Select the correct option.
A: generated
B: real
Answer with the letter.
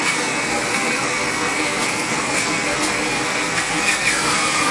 A